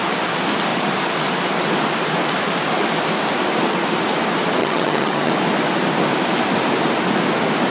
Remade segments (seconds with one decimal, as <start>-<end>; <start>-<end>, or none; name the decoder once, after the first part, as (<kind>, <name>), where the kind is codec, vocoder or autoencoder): 4.6-5.3 (vocoder, HiFi-GAN)